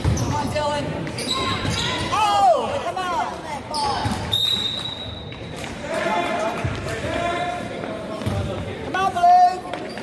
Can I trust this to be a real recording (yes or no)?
no